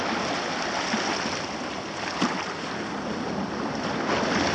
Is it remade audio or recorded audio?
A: recorded